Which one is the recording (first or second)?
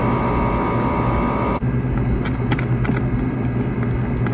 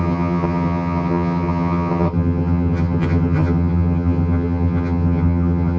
first